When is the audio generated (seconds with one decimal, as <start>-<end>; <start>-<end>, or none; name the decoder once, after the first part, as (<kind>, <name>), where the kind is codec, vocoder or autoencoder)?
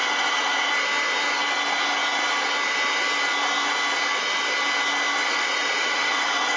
0.0-0.7 (vocoder, WaveNeXt); 5.2-6.6